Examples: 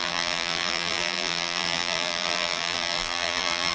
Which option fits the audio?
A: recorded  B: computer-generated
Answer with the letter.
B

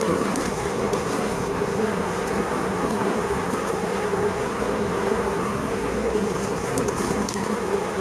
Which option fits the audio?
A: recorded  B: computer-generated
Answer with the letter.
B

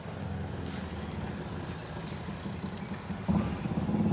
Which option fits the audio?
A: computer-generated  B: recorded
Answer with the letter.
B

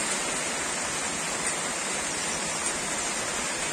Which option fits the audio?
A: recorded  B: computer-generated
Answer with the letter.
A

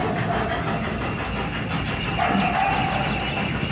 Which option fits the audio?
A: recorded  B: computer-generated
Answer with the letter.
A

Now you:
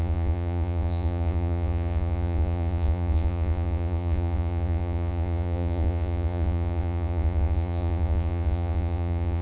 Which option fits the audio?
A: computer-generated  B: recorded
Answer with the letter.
A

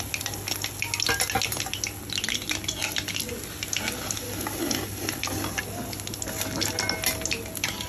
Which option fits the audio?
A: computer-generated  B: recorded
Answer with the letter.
B